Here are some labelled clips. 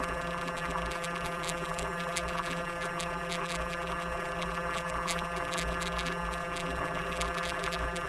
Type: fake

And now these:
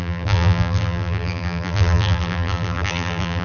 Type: fake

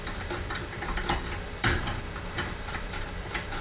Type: fake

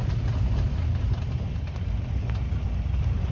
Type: fake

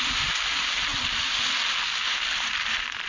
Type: real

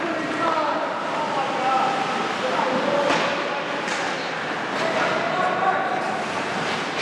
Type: real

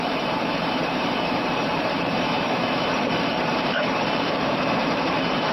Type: fake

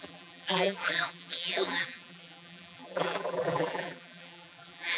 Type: fake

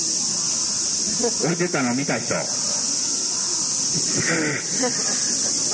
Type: real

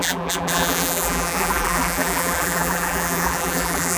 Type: fake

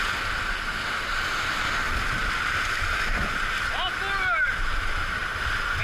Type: real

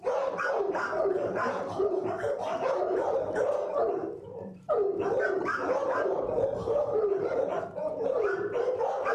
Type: fake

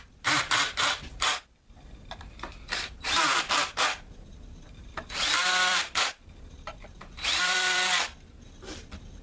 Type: fake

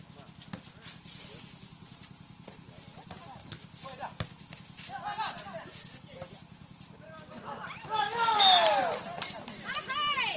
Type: real